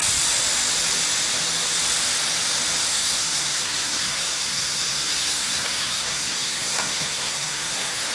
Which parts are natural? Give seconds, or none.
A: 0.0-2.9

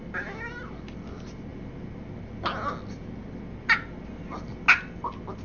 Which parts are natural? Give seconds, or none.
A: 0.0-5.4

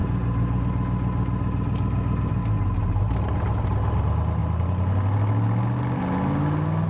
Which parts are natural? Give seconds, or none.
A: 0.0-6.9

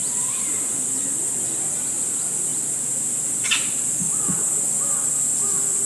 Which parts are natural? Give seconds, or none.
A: 1.1-5.9

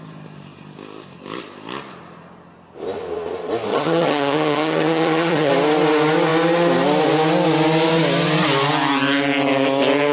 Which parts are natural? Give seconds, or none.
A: 0.0-3.7; 5.5-10.1